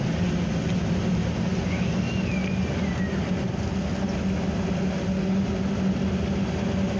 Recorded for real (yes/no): yes